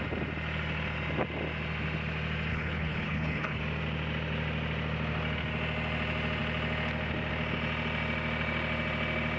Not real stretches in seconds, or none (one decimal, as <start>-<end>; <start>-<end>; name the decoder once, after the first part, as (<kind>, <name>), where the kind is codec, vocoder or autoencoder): 2.5-3.6 (codec, HILCodec)